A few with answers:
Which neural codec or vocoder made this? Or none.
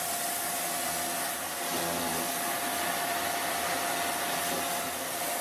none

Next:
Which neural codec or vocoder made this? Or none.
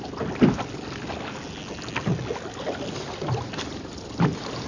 none